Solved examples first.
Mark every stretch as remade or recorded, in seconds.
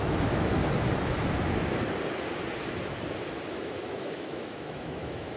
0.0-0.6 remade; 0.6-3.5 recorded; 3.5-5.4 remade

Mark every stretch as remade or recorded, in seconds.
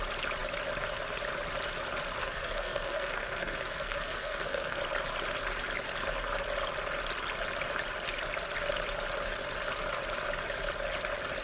0.0-2.2 recorded; 2.2-4.8 remade; 4.8-11.4 recorded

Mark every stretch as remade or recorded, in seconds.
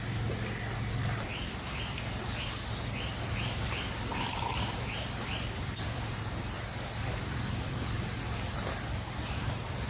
0.0-4.1 recorded; 4.1-8.7 remade; 8.7-9.9 recorded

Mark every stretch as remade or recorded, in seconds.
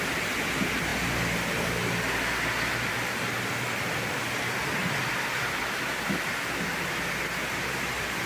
0.0-8.3 recorded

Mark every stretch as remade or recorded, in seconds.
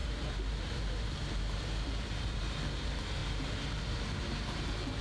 0.0-5.0 remade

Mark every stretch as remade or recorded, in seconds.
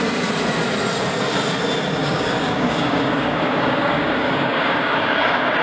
0.0-2.0 recorded; 2.0-5.6 remade